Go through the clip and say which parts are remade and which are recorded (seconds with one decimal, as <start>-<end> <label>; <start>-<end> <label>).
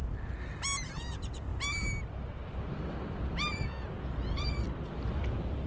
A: 0.0-5.7 recorded